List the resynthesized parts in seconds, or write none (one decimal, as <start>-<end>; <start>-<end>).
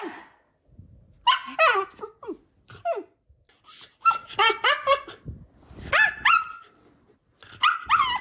none